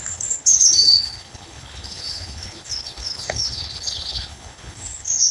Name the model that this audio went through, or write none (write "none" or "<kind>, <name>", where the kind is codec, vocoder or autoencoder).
codec, HILCodec